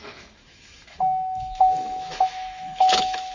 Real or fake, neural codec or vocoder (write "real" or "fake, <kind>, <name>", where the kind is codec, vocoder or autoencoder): fake, autoencoder, DAC-VAE